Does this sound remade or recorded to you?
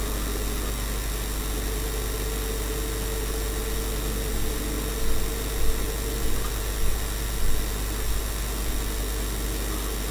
recorded